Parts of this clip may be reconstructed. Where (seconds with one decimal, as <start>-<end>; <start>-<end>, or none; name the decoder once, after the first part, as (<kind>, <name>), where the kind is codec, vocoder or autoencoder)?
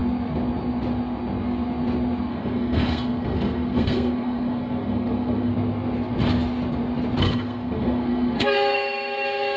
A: 2.3-5.5 (codec, SNAC); 7.2-9.6